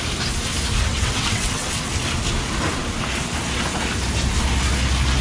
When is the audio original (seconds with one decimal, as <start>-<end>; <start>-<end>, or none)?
0.0-0.9; 1.9-5.2